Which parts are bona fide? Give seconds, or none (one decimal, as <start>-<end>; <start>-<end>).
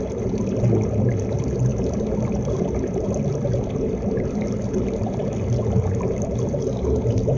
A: 0.0-7.4